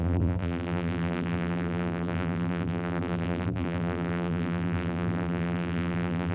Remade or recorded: remade